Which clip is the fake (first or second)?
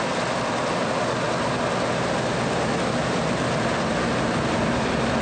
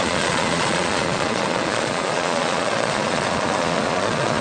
second